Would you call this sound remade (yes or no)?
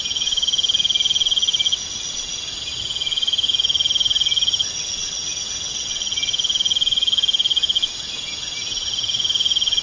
no